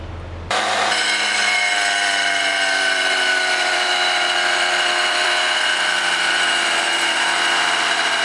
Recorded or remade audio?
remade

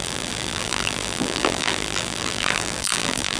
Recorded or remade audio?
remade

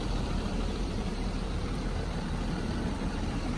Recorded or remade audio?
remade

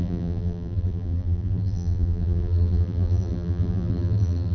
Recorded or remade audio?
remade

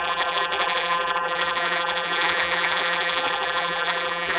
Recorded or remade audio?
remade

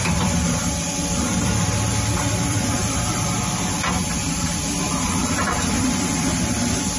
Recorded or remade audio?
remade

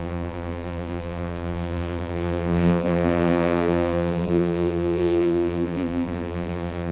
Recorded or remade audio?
remade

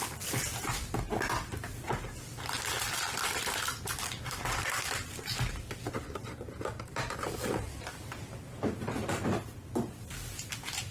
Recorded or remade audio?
recorded